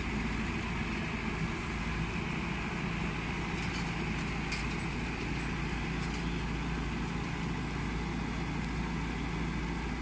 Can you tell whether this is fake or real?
real